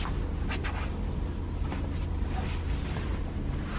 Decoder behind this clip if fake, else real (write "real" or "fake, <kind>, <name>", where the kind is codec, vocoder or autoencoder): real